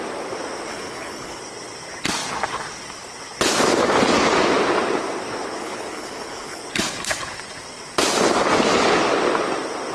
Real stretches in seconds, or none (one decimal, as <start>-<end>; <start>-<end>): 0.0-0.7; 1.4-5.6; 6.6-9.9